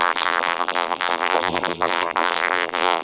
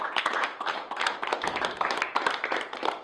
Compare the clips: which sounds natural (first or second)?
second